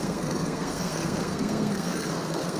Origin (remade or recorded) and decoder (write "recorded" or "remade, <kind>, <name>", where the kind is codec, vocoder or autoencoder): remade, codec, SNAC